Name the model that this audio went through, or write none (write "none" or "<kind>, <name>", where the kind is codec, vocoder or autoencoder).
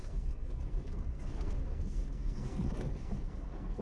codec, SNAC